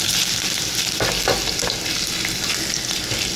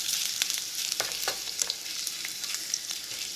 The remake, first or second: second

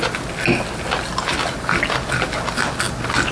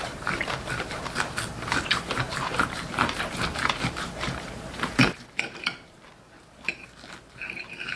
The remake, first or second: second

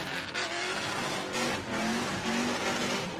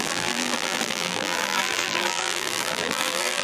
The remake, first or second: second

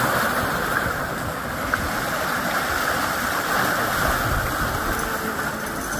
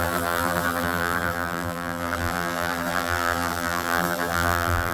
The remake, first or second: second